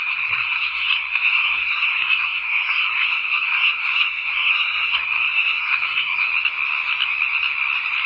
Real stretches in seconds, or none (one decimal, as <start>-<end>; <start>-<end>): 6.3-8.1

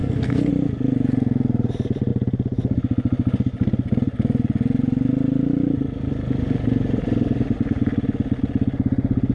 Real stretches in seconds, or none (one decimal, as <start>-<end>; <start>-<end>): 0.5-9.3

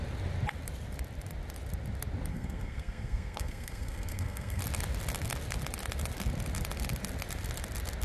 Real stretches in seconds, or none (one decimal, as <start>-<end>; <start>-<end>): 0.0-2.3; 4.6-8.0

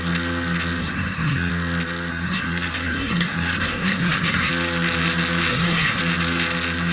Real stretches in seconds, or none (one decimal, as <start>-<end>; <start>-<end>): 0.0-0.8; 1.5-2.1; 4.5-5.5; 6.0-6.9

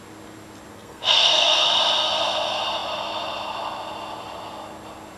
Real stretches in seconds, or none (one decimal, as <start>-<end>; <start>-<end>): 0.0-0.7; 1.7-5.2

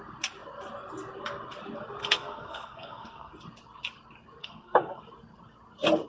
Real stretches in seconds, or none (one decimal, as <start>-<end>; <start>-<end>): 0.0-2.0; 3.3-4.4; 5.0-6.1

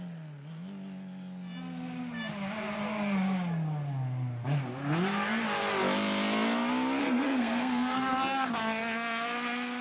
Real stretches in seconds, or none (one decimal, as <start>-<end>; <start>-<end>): 0.0-7.0; 8.5-9.8

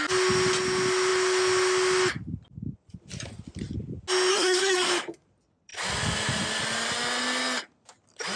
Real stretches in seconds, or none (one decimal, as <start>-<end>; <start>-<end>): 0.0-4.3; 4.9-8.4